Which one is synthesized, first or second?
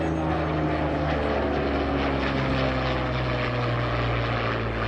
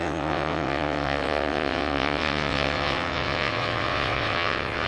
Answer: second